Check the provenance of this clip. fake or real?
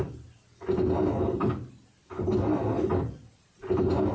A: real